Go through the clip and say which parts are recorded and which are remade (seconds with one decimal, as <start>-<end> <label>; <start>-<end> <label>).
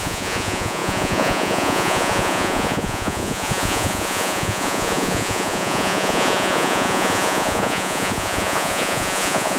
0.0-9.6 remade